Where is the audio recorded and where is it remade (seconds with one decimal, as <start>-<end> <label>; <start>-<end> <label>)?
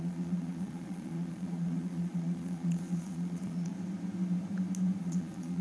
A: 0.0-3.7 remade; 3.7-5.0 recorded; 5.0-5.6 remade